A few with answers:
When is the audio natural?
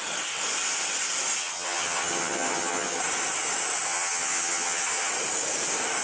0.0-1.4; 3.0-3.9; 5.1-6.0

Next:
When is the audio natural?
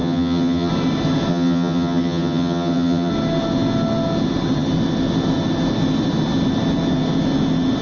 0.7-1.3; 3.1-7.8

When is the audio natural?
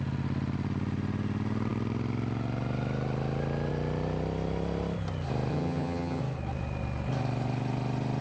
0.0-5.5; 6.2-8.2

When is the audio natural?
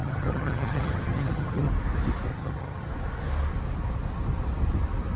1.7-2.3; 2.9-5.2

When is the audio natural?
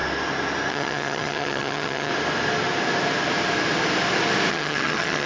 0.0-0.7; 2.1-4.5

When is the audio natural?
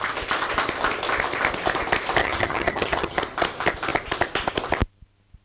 0.0-2.2; 3.2-5.4